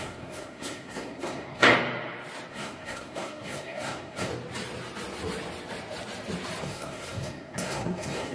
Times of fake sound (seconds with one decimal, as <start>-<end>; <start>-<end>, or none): 0.0-1.7; 2.5-4.3; 6.6-8.3